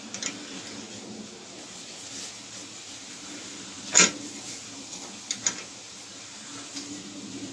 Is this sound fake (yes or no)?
no